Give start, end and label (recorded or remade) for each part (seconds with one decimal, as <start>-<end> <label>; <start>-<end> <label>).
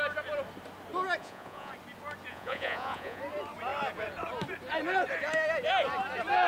0.0-1.2 recorded; 1.2-1.7 remade; 1.7-2.3 recorded; 2.3-3.2 remade; 3.2-6.5 recorded